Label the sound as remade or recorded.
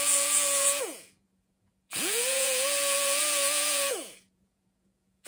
remade